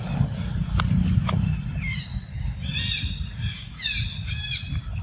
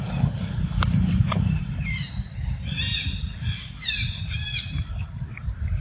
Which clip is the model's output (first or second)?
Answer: second